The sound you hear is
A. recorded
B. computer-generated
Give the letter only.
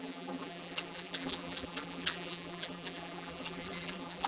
B